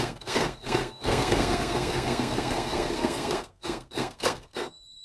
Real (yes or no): no